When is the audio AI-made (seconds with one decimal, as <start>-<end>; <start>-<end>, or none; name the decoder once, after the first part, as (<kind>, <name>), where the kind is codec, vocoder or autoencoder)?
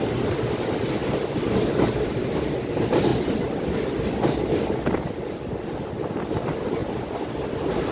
3.1-6.3 (vocoder, BigVGAN v2)